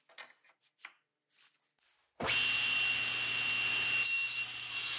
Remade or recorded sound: recorded